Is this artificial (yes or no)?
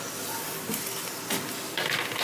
no